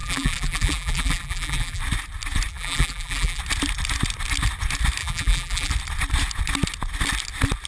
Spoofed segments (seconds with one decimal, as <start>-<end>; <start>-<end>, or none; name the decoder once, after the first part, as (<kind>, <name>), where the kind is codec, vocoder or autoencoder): 0.0-1.8 (vocoder, BigVGAN v2); 2.5-3.4; 5.0-5.7